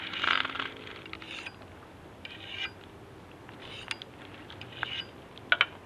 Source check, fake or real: real